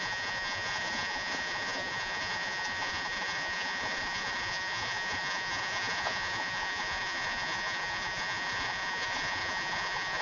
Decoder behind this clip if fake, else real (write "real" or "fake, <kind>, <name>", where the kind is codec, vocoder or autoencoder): fake, vocoder, Vocos